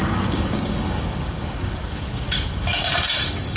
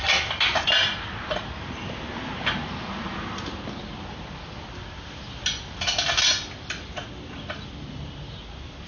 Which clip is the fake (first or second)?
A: first